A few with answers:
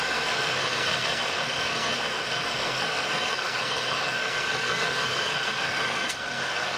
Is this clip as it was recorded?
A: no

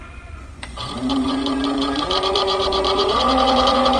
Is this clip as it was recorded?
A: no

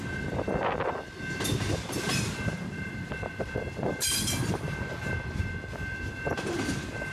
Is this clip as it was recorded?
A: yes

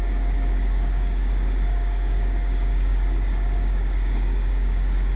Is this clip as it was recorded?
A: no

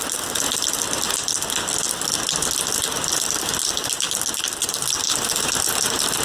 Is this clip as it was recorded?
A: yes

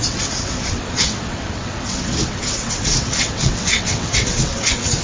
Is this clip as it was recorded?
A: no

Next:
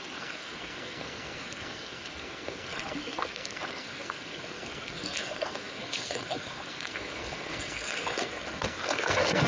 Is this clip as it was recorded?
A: no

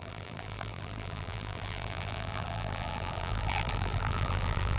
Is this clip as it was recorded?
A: no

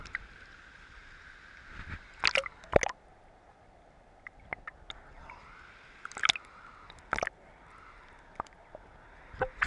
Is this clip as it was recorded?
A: yes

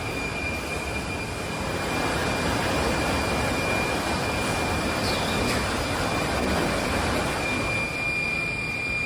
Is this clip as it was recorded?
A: yes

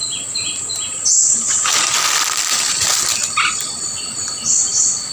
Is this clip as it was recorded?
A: yes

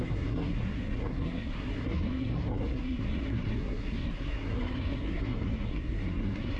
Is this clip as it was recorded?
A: no